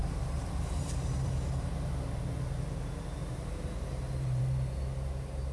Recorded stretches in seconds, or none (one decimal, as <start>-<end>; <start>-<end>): 1.3-3.2; 4.4-5.5